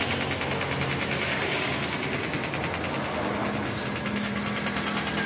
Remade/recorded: recorded